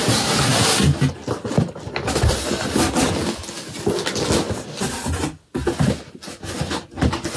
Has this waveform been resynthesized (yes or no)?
no